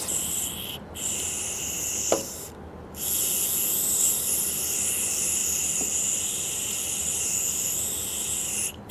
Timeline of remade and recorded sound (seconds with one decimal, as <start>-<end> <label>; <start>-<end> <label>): 0.0-8.9 recorded